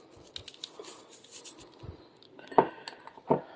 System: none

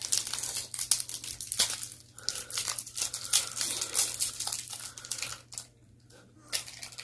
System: none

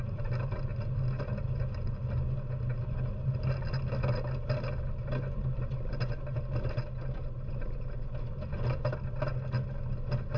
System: none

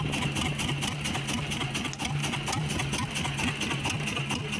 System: none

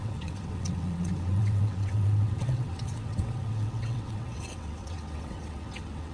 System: vocoder, WaveNeXt